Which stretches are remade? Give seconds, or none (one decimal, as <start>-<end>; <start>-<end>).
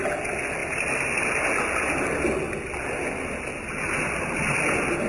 none